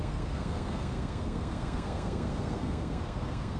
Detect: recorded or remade remade